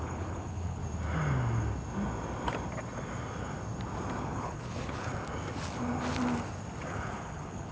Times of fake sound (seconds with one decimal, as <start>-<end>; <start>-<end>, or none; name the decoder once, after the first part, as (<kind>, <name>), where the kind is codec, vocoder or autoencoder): 0.0-0.8 (codec, HILCodec); 4.2-5.1; 6.8-7.7